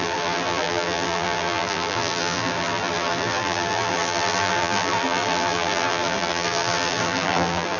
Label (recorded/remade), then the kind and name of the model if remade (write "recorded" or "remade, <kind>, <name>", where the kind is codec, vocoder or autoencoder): remade, vocoder, BigVGAN v2